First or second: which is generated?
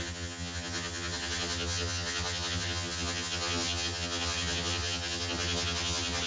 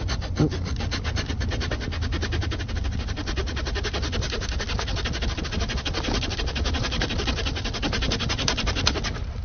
first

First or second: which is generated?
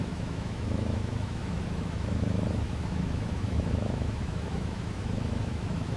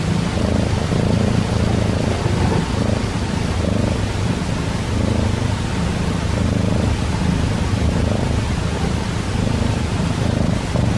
first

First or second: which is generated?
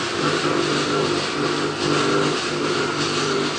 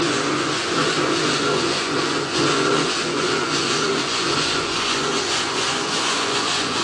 second